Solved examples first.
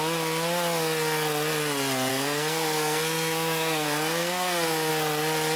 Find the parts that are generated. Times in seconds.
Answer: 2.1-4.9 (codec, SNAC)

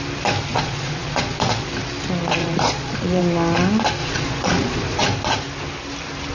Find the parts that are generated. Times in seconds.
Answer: 0.5-1.7 (vocoder, Vocos); 2.4-3.2; 4.0-5.0